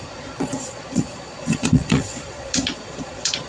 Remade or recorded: remade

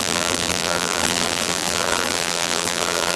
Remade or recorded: remade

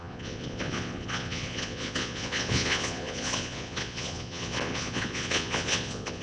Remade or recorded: remade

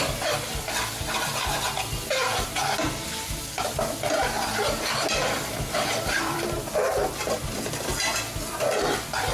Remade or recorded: remade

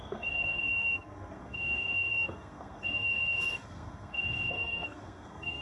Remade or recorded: remade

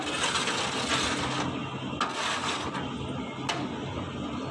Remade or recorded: recorded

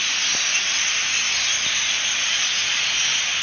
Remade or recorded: recorded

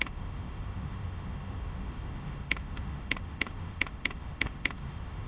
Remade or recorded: remade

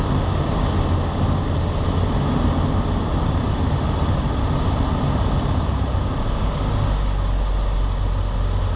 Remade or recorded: recorded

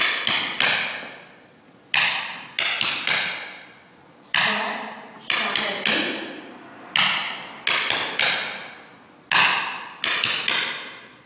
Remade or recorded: recorded